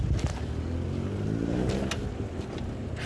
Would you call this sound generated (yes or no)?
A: no